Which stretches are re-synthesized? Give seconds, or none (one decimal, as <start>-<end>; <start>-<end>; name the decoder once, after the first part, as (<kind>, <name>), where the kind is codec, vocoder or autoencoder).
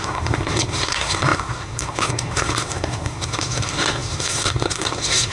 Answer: 0.0-5.3 (codec, SNAC)